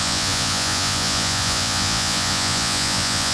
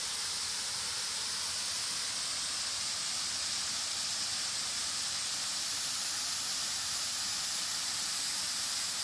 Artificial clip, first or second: first